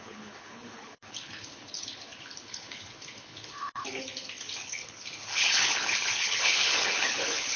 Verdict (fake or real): fake